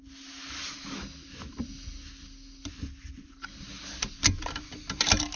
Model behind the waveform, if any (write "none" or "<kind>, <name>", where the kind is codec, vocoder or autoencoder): none